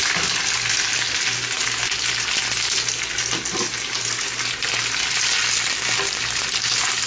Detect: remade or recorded recorded